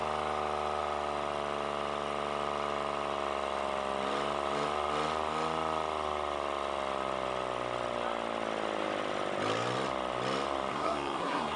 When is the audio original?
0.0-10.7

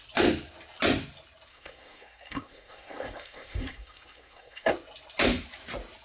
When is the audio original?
0.0-1.5; 4.7-6.0

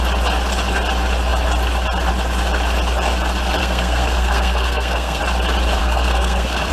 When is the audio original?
0.0-3.6; 5.2-5.8

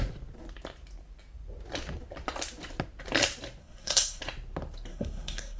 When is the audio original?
0.0-3.6; 4.2-4.9